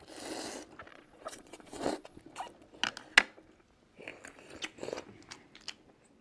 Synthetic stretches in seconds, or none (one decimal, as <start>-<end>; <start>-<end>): 0.9-2.2